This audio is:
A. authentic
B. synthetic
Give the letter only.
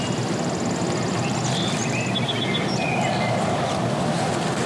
A